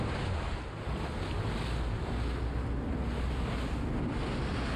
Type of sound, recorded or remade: recorded